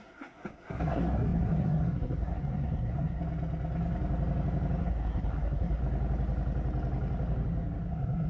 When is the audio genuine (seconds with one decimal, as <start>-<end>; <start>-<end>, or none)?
3.2-4.8; 5.8-7.9